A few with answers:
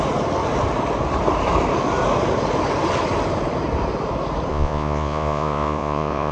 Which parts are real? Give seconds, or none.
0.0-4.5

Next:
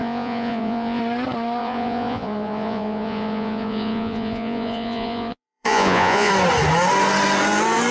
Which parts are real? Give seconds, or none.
1.0-1.6; 6.3-7.9

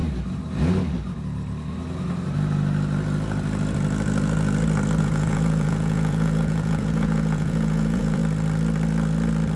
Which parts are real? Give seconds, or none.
0.0-5.0; 8.2-9.6

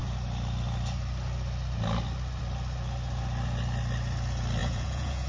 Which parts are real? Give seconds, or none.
0.0-4.6

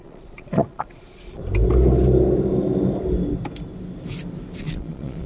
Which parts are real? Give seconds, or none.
1.4-4.6

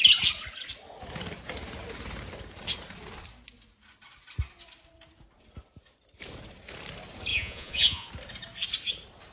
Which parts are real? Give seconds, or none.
0.0-7.3; 8.1-9.3

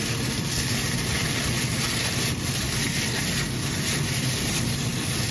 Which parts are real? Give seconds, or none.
0.0-5.3